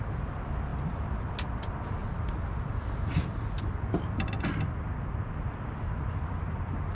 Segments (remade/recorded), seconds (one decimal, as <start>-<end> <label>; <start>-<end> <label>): 0.0-0.7 recorded; 0.7-1.3 remade; 1.3-2.0 recorded; 2.0-4.5 remade; 4.5-6.9 recorded